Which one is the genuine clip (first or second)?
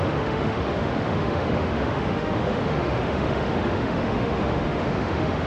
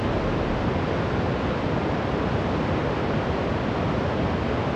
second